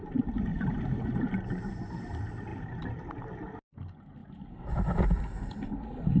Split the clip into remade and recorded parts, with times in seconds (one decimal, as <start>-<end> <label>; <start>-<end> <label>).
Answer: 0.0-0.5 recorded; 0.5-2.1 remade; 2.1-2.5 recorded; 2.5-3.2 remade; 3.2-4.2 recorded; 4.2-5.2 remade; 5.2-6.2 recorded